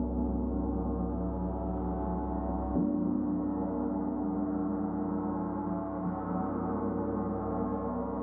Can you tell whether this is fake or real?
real